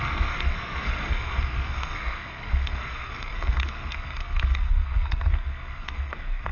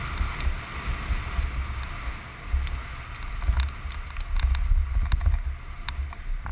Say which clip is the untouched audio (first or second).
second